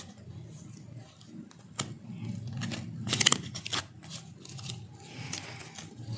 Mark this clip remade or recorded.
recorded